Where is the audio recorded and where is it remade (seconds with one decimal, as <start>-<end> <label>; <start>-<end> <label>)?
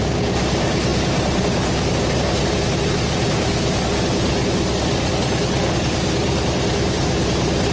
0.0-7.7 recorded